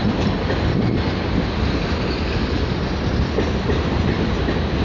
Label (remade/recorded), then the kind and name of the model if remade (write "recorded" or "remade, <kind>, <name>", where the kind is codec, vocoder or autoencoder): recorded